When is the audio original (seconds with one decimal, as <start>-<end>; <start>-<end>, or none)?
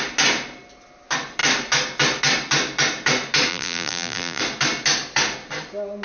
0.0-3.5; 4.4-6.0